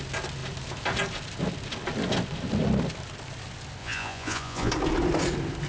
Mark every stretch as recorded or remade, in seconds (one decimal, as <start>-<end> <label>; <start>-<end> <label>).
0.0-3.8 recorded; 3.8-4.7 remade; 4.7-5.7 recorded